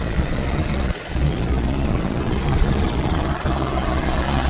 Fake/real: fake